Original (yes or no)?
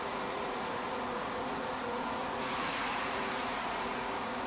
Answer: no